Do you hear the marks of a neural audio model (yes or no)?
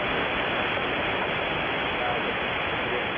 no